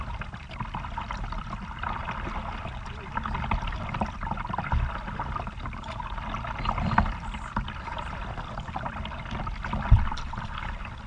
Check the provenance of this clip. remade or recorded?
recorded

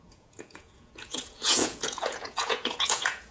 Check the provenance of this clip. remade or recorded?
remade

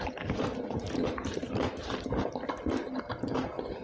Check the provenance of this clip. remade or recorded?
remade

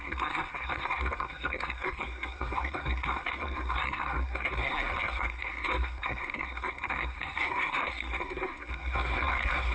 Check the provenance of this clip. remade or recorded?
remade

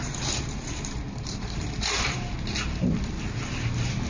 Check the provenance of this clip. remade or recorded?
remade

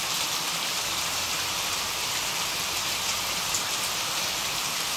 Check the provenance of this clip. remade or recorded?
remade